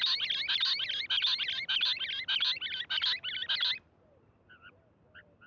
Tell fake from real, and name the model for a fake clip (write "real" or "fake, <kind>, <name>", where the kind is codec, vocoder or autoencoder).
real